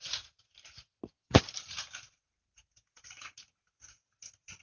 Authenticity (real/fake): real